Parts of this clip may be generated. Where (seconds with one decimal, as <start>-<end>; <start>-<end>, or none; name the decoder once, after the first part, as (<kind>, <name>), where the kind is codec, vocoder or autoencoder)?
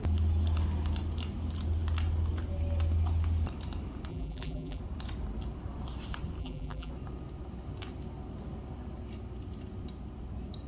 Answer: 4.1-4.8 (vocoder, BigVGAN v2); 6.4-6.9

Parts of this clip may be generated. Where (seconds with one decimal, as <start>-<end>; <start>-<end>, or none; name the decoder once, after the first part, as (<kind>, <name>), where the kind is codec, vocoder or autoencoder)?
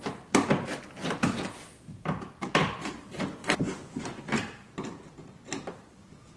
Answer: 3.4-4.2 (vocoder, Vocos)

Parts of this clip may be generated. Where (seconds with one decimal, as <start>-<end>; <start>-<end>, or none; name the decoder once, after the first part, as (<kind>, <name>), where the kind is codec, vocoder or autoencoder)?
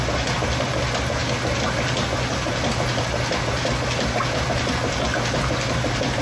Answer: none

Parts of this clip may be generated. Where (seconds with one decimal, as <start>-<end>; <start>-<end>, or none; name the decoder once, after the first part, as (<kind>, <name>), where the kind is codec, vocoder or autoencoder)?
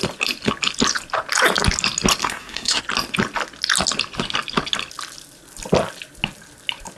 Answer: 2.2-2.8 (codec, SNAC)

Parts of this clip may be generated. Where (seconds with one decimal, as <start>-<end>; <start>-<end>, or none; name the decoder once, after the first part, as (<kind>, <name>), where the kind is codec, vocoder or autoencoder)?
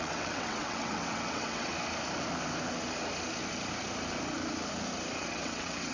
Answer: 0.0-1.7 (vocoder, WaveNeXt); 5.2-5.9